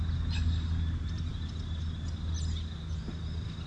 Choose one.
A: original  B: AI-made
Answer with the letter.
A